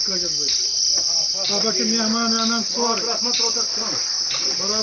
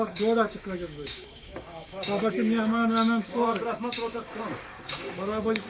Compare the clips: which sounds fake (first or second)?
second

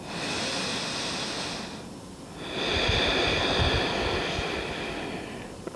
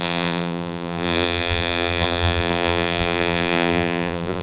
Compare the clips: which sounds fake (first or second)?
second